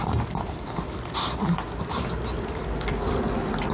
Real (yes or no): yes